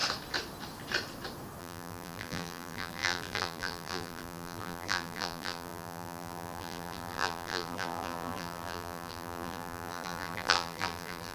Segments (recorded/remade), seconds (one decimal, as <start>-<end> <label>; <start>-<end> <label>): 0.0-1.6 recorded; 1.6-11.3 remade